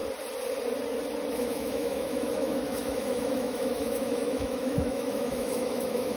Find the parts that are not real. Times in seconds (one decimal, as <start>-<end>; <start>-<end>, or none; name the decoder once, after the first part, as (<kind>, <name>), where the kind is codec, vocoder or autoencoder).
1.3-6.2 (autoencoder, DAC-VAE)